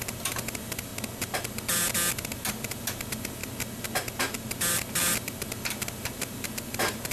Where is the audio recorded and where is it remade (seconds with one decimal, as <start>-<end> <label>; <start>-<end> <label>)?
0.0-0.9 remade; 0.9-2.1 recorded; 2.1-3.4 remade; 3.4-4.7 recorded; 4.7-7.1 remade